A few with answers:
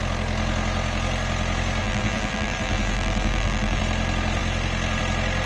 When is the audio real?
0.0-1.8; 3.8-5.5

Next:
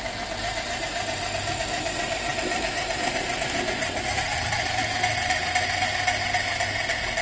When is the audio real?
0.0-7.2

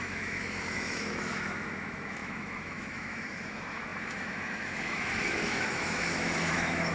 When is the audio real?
none

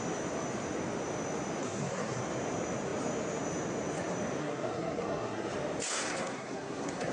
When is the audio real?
0.0-1.6; 2.2-4.4; 5.5-5.9

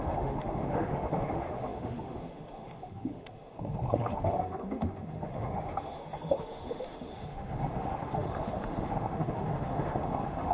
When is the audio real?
none

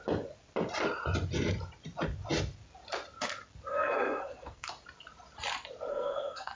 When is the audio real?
0.0-3.7; 4.7-5.9